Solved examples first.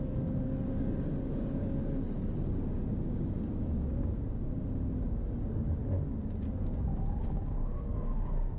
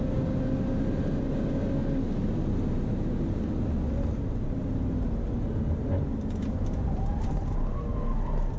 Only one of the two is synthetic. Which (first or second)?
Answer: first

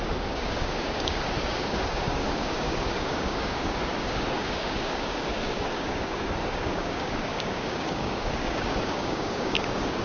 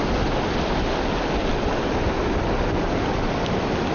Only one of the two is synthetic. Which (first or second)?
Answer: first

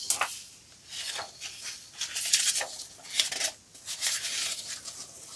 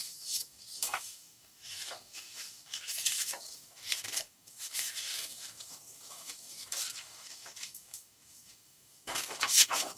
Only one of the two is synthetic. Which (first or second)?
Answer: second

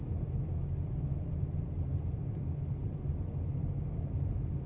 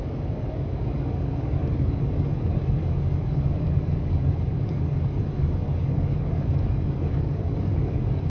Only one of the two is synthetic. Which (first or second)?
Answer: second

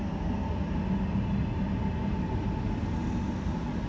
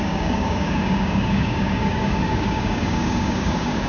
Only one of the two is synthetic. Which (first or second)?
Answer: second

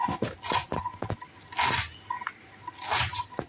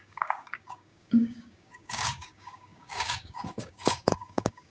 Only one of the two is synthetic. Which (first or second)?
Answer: second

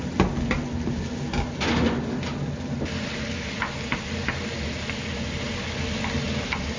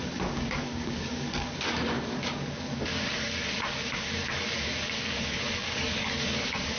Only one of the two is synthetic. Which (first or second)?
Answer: second